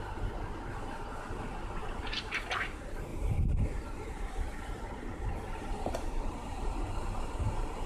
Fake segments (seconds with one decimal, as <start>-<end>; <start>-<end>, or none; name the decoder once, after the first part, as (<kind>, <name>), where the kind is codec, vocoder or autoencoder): 1.8-2.3 (vocoder, BigVGAN v2); 3.1-6.7